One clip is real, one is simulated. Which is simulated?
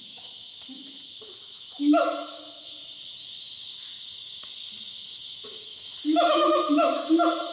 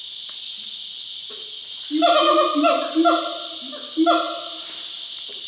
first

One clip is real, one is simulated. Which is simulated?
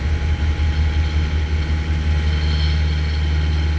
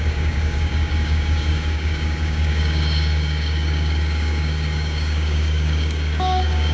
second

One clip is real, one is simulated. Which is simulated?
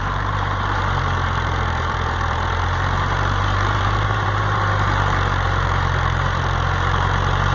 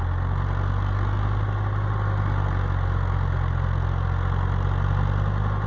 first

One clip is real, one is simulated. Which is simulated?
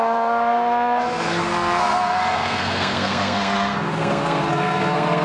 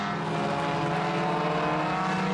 first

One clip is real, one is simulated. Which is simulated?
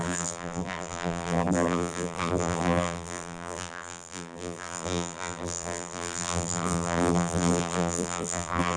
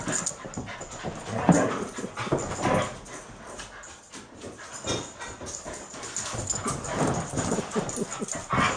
first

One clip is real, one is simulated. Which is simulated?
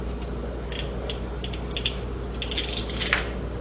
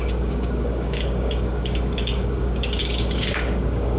second